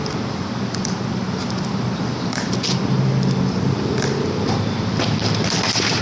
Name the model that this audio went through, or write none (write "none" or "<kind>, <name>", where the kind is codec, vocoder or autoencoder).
vocoder, BigVGAN v2